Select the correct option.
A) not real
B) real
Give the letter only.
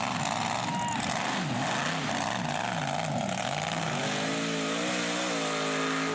B